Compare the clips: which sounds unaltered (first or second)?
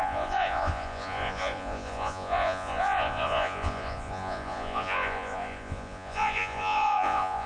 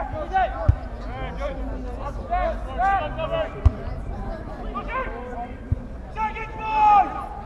second